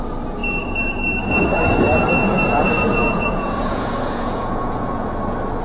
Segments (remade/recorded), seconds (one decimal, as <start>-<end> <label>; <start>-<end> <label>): 0.0-2.3 recorded; 2.3-5.1 remade; 5.1-5.6 recorded